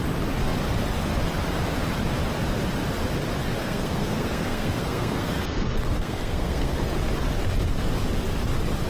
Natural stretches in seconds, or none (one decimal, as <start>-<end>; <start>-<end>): 0.0-3.6; 6.8-8.9

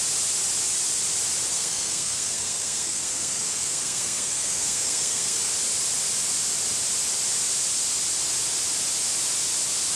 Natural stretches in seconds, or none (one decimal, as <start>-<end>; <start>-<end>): 0.0-1.5; 5.5-10.0

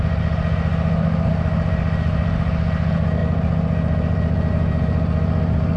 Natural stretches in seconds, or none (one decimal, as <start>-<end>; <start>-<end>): 0.0-5.8

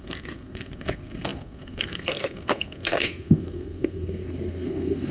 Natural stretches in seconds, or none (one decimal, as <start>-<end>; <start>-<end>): none